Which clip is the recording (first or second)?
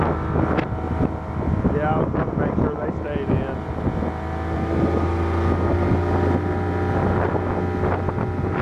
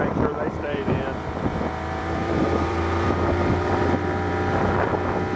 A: first